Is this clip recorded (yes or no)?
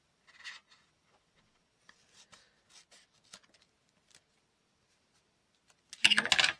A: yes